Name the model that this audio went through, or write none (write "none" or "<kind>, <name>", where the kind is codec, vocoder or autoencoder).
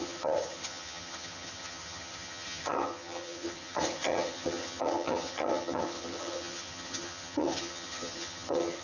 vocoder, HiFi-GAN